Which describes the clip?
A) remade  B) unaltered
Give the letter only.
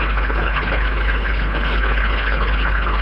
A